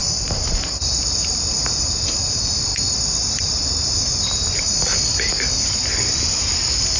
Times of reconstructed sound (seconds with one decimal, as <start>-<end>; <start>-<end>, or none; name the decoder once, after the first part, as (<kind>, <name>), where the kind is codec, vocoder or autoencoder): 0.0-1.7 (vocoder, BigVGAN v2)